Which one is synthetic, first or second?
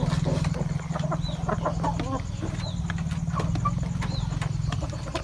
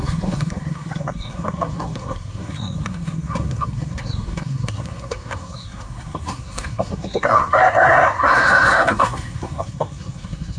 second